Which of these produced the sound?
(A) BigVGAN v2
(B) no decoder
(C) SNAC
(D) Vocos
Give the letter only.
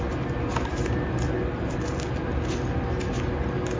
B